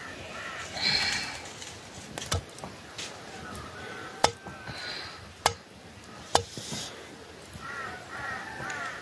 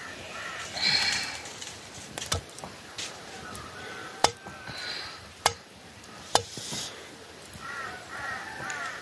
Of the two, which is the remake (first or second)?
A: second